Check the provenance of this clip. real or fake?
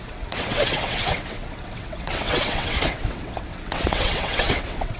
fake